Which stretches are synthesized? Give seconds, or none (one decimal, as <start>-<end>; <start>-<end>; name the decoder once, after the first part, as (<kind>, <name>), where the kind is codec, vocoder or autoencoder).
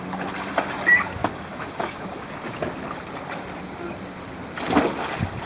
1.2-2.3 (autoencoder, DAC-VAE)